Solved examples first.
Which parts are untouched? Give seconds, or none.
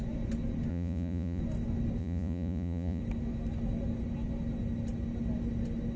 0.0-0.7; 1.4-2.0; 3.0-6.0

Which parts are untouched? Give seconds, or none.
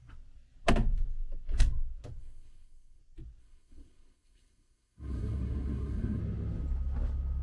0.0-2.2; 3.0-3.4; 6.2-7.4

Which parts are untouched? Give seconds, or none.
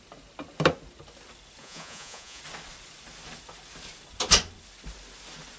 0.0-1.6; 2.4-5.6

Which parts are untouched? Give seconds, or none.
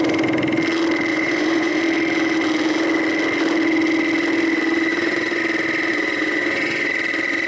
0.0-1.1; 1.8-4.9; 5.4-5.9; 6.9-7.5